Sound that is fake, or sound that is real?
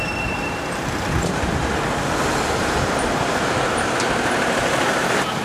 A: fake